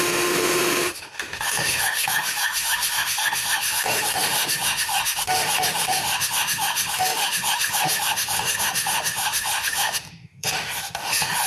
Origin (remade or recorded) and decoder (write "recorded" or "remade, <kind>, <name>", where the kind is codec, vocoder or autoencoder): remade, autoencoder, DAC-VAE